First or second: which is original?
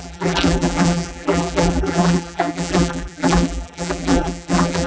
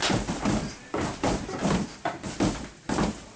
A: second